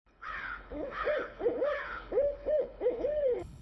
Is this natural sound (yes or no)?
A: no